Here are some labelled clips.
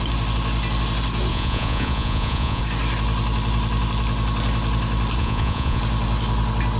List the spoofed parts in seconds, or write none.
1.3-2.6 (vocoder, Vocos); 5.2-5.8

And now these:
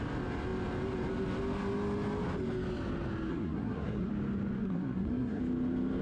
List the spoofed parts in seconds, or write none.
3.3-4.1 (codec, SNAC); 4.6-5.4

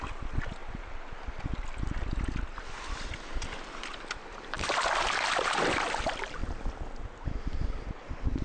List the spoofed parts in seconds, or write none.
0.6-4.9 (vocoder, BigVGAN v2)